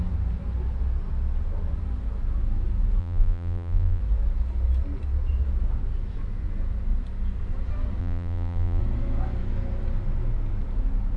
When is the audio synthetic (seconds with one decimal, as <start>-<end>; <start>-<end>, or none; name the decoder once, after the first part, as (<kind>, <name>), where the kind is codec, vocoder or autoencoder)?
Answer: 3.0-4.0 (vocoder, BigVGAN v2); 8.0-8.8